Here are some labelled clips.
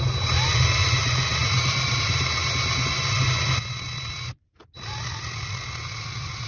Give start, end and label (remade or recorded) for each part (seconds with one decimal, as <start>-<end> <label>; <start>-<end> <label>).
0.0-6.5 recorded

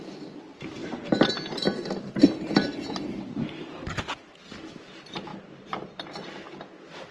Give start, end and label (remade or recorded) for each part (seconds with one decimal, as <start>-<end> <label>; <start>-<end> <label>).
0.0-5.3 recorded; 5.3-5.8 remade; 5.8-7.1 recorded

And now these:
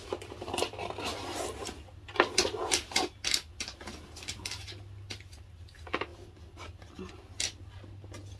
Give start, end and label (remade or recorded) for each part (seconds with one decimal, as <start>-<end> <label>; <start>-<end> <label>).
0.0-6.1 recorded; 6.1-7.1 remade; 7.1-8.4 recorded

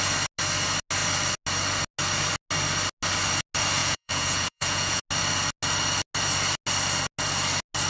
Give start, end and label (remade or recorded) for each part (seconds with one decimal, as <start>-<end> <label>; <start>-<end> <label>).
0.0-3.8 recorded; 3.8-5.0 remade; 5.0-7.9 recorded

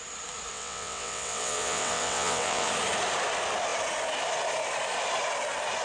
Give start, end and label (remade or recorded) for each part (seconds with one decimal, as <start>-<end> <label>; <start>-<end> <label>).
0.0-0.5 recorded; 0.5-2.7 remade; 2.7-5.8 recorded